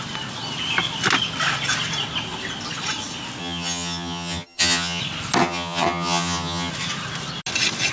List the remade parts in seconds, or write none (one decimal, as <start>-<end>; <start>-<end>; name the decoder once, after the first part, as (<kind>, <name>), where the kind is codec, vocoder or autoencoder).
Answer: 3.4-5.0 (vocoder, HiFi-GAN); 5.4-6.7